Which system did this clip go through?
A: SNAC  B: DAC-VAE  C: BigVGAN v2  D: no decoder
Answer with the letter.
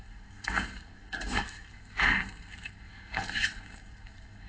A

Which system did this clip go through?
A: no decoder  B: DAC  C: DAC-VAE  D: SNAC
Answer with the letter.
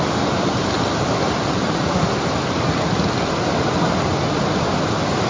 A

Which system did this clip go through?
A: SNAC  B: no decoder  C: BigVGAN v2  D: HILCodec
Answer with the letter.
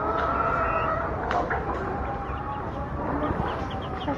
B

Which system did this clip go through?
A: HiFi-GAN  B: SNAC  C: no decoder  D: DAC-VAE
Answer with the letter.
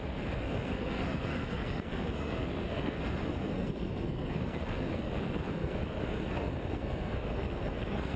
B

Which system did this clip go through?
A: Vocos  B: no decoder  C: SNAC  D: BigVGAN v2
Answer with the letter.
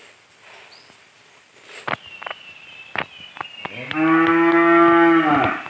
B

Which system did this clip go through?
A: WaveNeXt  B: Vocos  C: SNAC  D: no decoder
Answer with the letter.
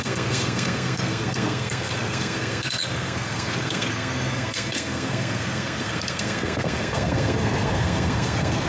C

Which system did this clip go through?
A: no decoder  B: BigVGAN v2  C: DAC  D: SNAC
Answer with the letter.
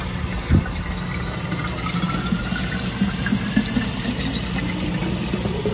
A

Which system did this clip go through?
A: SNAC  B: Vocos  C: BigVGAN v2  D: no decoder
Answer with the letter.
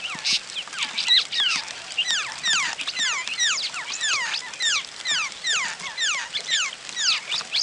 D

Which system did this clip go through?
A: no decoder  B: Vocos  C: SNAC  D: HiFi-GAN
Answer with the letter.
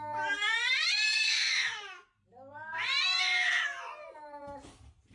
A